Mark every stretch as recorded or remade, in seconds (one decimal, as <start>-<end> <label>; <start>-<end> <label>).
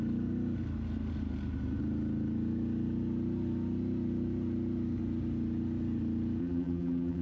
0.0-6.4 recorded; 6.4-7.2 remade